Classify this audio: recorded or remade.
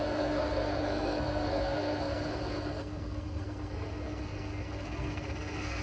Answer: remade